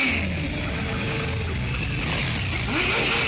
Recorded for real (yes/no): yes